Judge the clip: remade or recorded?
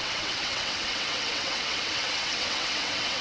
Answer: remade